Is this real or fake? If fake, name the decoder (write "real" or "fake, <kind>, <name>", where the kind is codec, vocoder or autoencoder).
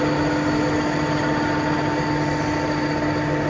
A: real